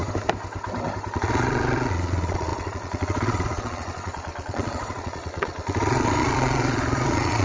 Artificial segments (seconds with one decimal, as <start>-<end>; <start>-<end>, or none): 1.1-7.4